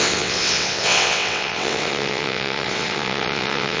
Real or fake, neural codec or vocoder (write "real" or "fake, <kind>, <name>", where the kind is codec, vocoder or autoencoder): fake, vocoder, WaveNeXt